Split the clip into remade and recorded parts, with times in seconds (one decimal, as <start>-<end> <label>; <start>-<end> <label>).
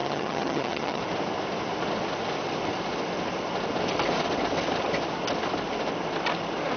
0.0-1.0 remade; 1.0-6.8 recorded